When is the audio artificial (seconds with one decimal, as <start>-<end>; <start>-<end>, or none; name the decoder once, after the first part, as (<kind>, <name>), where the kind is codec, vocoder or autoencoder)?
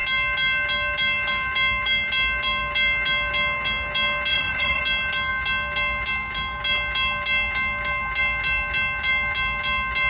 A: 4.3-4.8 (vocoder, Vocos)